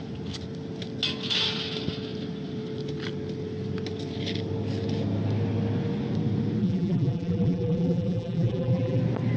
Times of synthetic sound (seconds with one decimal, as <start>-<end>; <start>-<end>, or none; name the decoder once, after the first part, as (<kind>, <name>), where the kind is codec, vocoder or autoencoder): 6.6-9.0 (vocoder, BigVGAN v2)